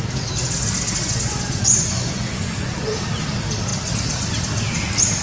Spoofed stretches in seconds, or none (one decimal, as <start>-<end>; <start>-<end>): 1.0-3.0